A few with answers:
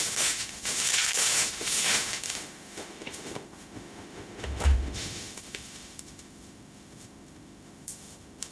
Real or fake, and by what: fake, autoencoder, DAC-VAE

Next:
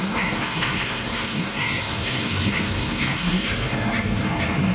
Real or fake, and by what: fake, codec, SNAC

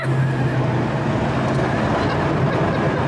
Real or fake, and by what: real